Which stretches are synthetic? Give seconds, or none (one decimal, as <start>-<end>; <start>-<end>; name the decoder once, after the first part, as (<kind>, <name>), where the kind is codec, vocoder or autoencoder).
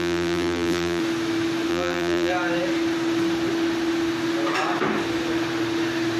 0.0-1.0 (vocoder, BigVGAN v2); 1.7-2.3